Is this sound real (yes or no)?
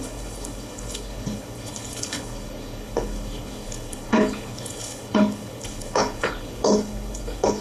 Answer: no